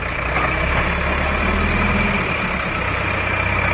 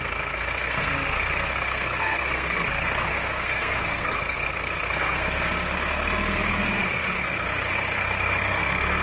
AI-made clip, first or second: second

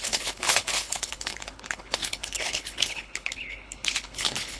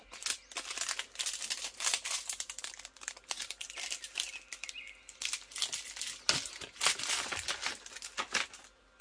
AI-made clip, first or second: first